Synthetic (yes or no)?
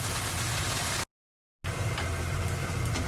no